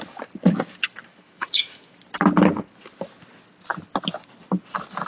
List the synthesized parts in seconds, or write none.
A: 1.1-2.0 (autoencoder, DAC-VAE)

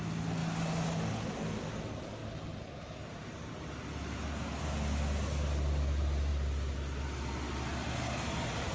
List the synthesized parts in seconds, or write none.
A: none

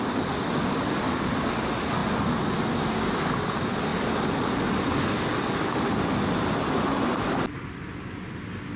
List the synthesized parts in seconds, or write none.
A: none

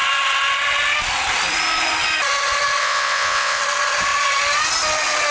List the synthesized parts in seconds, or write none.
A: 2.8-3.6 (vocoder, WaveNeXt)

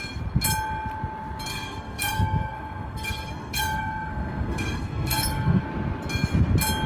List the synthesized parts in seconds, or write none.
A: 1.5-5.6 (codec, SNAC)

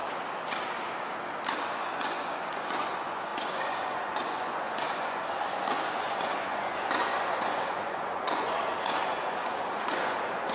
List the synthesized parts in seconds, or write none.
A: 1.6-10.5 (vocoder, Vocos)

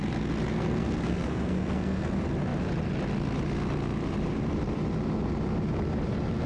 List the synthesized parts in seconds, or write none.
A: 0.5-2.1 (codec, SNAC)